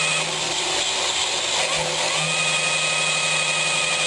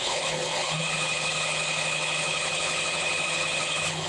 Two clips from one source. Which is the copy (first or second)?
second